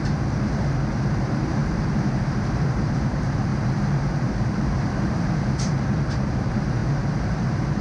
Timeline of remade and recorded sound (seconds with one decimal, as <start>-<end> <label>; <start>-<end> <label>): 0.0-3.5 remade; 3.5-4.0 recorded; 4.0-7.8 remade